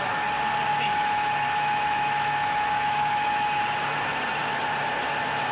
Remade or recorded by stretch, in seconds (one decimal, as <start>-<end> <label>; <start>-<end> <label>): 0.0-0.7 recorded; 0.7-3.6 remade; 3.6-5.5 recorded